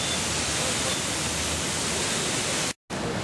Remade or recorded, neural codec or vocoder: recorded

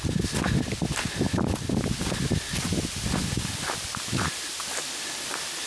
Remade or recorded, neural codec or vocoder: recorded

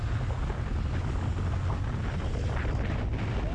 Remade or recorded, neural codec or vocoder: recorded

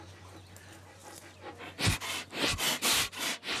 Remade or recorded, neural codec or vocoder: recorded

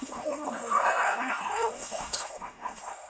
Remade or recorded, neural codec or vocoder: remade, codec, SNAC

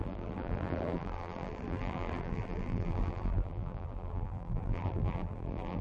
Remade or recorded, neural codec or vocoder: remade, vocoder, BigVGAN v2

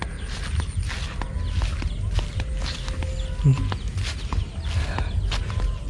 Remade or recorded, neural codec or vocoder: recorded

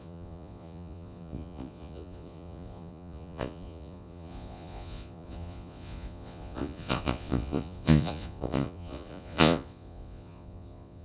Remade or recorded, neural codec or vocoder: remade, vocoder, Vocos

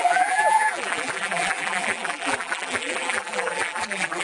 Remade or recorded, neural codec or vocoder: remade, vocoder, BigVGAN v2